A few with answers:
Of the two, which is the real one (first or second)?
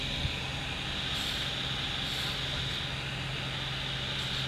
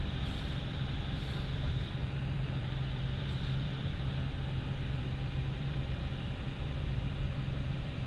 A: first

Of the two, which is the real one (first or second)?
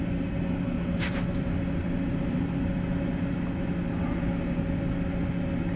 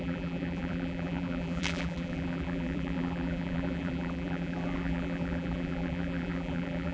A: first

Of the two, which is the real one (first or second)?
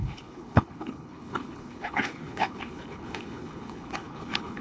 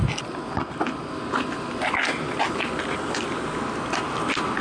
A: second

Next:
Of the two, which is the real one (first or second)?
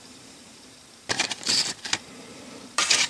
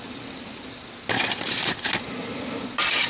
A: second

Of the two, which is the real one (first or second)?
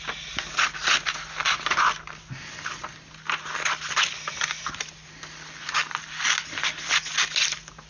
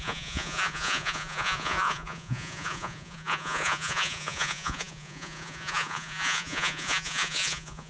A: first